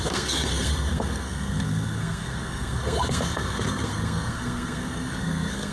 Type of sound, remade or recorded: remade